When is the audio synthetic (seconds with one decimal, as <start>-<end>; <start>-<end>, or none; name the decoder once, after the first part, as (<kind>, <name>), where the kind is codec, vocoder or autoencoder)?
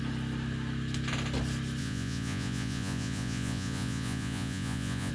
1.8-5.1 (vocoder, Vocos)